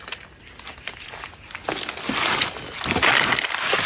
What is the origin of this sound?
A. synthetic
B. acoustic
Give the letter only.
B